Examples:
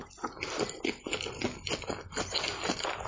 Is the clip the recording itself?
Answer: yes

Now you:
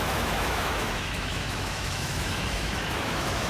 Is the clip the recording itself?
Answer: no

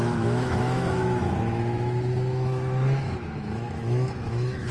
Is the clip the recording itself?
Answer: no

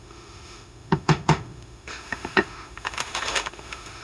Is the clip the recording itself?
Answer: no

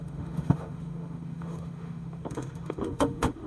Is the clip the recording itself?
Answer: no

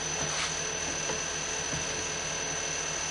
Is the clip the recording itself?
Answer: yes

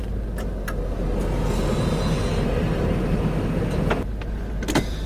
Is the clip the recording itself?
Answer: yes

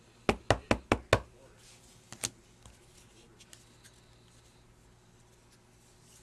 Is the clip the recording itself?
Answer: yes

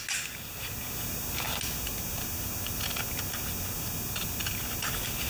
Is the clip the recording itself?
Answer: yes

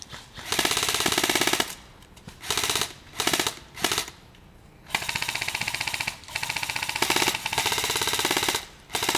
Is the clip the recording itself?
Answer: yes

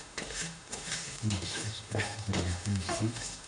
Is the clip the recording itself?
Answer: no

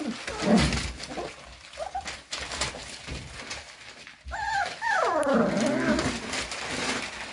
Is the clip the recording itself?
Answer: yes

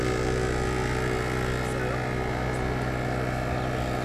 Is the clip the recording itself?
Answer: yes